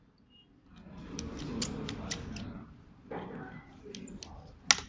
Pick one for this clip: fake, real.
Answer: real